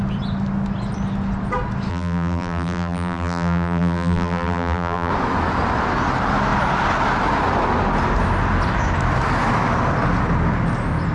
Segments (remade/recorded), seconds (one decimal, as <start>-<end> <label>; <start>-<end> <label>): 0.0-1.9 recorded; 1.9-5.1 remade; 5.1-11.1 recorded